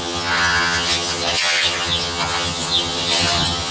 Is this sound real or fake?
fake